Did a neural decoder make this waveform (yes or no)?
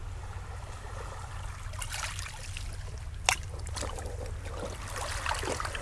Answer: no